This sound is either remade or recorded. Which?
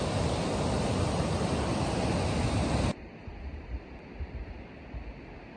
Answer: recorded